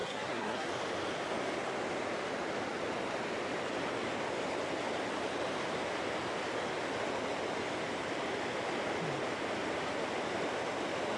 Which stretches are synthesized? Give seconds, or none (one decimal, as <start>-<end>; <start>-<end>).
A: 0.0-0.7